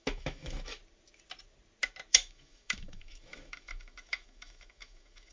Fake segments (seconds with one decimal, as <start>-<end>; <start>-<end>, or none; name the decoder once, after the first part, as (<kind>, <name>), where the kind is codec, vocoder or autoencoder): 0.0-0.8 (autoencoder, DAC-VAE); 2.1-5.3

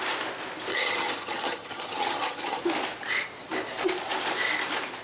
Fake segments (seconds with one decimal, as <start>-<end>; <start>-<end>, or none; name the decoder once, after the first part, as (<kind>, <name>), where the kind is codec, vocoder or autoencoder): 0.7-2.6 (vocoder, HiFi-GAN)